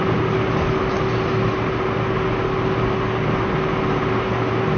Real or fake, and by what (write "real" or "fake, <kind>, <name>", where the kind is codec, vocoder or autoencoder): real